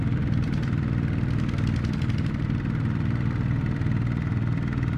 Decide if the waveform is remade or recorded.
remade